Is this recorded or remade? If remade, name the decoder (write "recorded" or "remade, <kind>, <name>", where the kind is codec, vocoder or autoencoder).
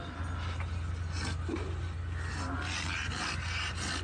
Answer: recorded